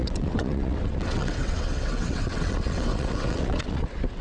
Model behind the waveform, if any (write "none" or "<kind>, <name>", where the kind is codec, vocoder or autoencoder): vocoder, WaveNeXt